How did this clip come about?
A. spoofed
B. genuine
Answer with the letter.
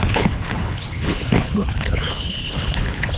A